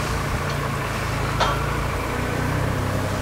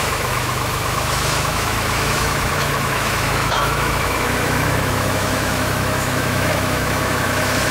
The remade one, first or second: second